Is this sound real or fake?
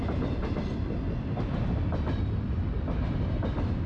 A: real